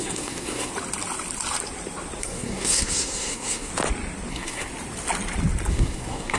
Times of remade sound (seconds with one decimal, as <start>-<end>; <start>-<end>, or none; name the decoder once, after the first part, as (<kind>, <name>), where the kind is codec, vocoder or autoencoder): 0.0-0.7 (codec, SNAC); 2.2-3.7; 4.3-4.7; 5.7-6.4